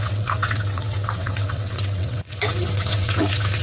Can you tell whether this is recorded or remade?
remade